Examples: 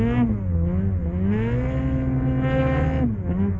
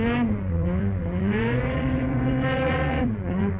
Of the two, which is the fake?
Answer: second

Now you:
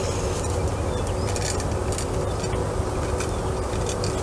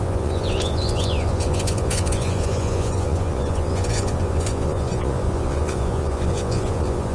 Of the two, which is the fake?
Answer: second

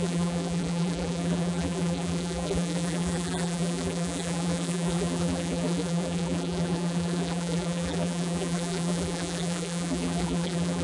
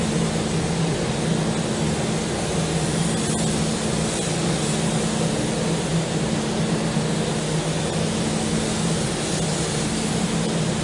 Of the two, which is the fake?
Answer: first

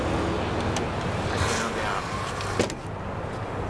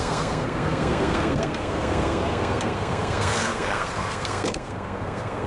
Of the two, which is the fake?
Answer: second